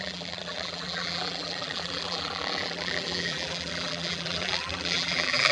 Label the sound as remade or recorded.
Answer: remade